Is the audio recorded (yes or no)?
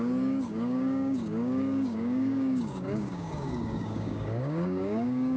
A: no